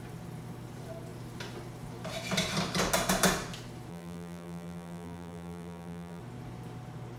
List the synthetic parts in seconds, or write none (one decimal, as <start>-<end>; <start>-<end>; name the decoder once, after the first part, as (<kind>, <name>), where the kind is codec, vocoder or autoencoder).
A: 3.9-6.2 (vocoder, BigVGAN v2)